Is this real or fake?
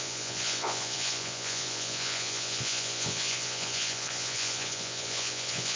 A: fake